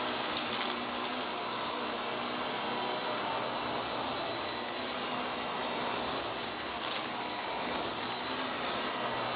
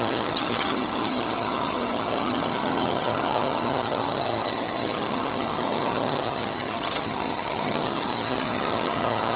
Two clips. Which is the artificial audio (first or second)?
second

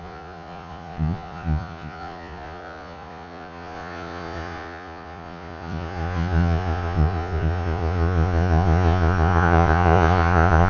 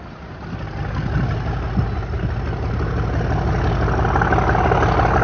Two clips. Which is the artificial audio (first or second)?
first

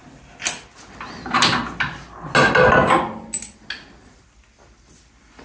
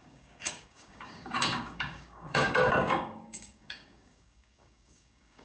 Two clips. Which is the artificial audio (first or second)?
second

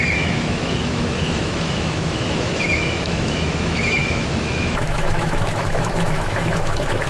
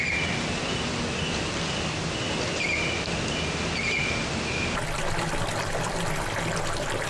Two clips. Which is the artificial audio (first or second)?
first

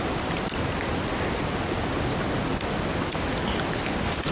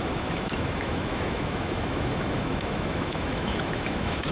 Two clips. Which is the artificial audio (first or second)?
second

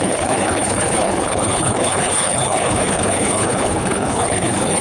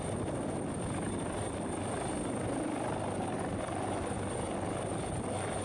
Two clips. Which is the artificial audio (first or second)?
first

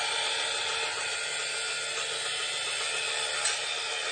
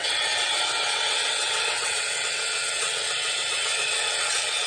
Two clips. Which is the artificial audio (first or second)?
second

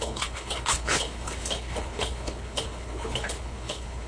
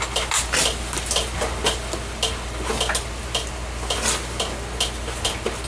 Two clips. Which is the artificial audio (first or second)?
first